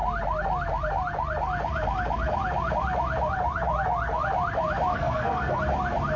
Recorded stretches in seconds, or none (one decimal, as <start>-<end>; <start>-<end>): 0.0-4.9; 5.6-6.2